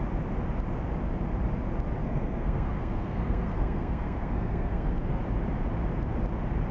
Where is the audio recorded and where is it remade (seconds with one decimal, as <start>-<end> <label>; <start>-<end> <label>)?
0.0-2.0 recorded; 2.0-5.2 remade; 5.2-6.7 recorded

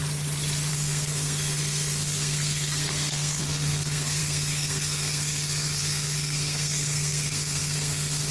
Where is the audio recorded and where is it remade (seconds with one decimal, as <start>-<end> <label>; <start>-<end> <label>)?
0.0-0.7 recorded; 0.7-8.3 remade

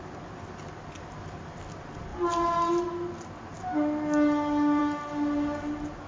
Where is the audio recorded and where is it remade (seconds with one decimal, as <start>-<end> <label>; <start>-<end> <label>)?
0.0-6.1 recorded

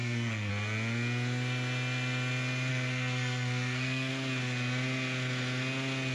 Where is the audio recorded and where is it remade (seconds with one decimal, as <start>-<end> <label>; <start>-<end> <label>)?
0.0-0.5 remade; 0.5-2.7 recorded; 2.7-4.1 remade; 4.1-6.1 recorded

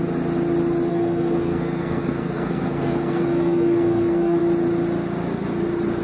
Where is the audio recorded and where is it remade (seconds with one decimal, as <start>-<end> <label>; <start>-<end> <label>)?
0.0-0.9 recorded; 0.9-4.4 remade; 4.4-6.0 recorded